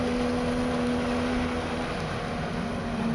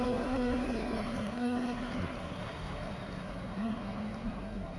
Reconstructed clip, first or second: second